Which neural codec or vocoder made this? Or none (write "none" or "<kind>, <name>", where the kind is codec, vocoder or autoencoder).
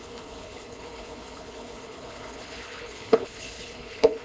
codec, HILCodec